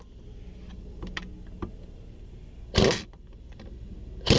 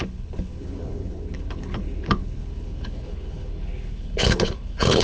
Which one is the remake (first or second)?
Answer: second